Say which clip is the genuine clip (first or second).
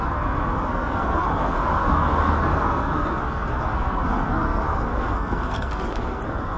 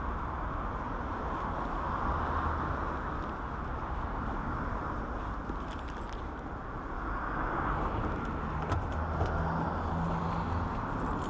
second